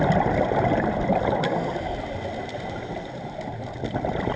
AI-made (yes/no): no